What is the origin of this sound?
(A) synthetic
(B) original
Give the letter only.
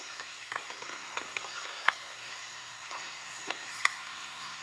A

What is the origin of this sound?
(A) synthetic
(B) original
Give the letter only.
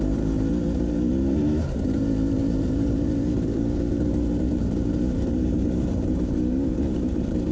A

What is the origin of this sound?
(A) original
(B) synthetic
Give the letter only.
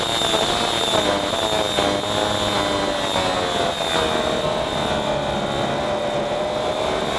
A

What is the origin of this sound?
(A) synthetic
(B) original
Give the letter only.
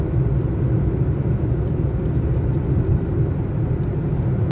A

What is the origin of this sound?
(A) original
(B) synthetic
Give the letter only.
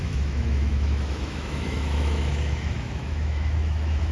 B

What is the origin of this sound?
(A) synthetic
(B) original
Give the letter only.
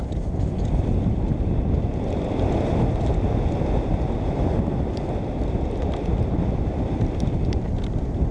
B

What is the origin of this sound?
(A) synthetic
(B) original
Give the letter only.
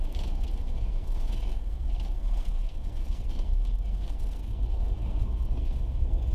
A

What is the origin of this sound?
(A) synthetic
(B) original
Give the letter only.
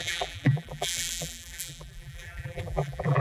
A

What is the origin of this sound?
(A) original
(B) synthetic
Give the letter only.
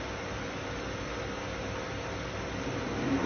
A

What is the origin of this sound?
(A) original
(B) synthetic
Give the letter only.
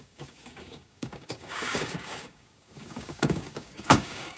B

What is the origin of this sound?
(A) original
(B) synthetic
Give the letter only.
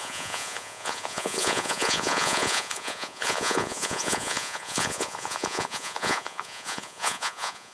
B